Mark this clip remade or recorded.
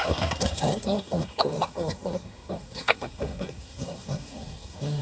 remade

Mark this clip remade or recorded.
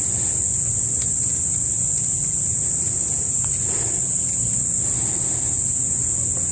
recorded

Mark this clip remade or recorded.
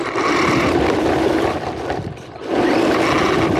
recorded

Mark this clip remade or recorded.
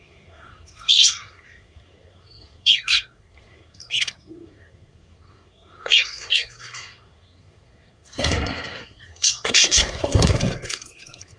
remade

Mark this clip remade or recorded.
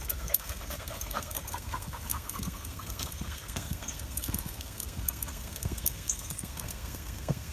remade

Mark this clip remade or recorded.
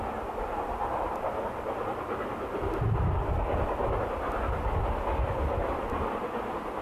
recorded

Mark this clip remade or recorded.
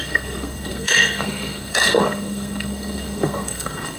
remade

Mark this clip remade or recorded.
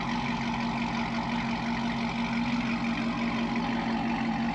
recorded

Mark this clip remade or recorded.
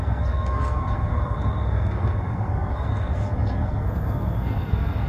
remade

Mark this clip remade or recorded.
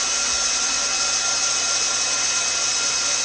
recorded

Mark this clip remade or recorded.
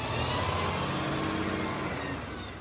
recorded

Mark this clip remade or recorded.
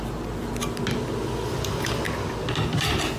recorded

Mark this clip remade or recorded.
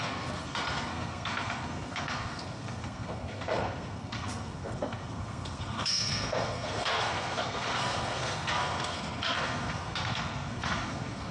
remade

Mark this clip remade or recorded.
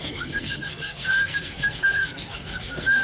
remade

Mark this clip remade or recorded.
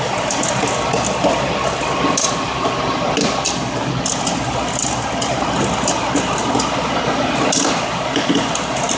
recorded